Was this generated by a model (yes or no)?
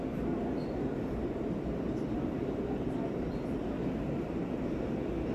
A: no